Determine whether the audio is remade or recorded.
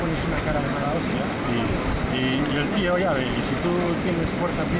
recorded